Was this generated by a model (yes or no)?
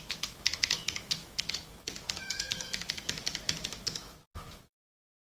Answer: yes